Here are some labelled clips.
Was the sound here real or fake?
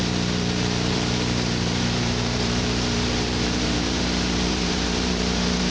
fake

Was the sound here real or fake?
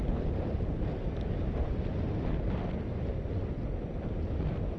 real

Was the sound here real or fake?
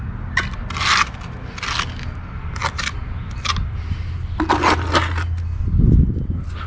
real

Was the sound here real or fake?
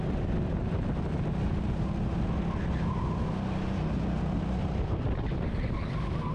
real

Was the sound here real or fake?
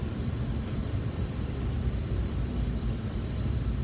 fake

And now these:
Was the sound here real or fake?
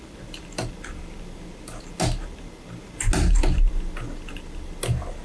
real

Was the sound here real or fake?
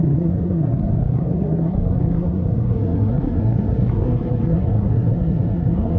fake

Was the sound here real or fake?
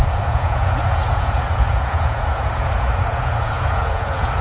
fake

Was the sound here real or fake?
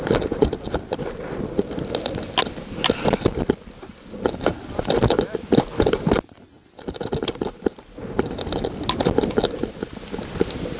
real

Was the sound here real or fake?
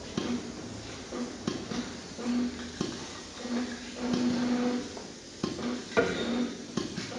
real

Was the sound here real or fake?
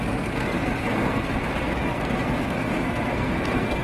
fake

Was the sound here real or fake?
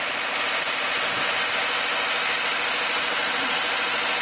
real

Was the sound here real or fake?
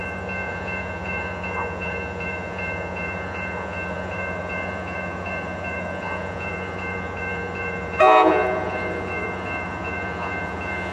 fake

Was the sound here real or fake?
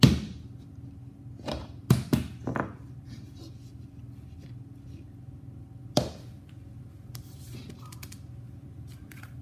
real